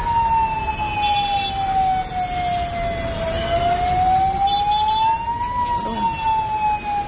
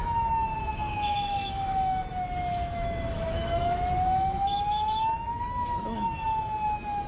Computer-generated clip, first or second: second